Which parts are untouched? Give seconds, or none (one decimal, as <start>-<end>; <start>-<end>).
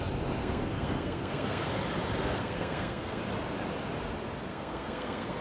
0.0-0.4; 1.7-2.2; 3.2-4.5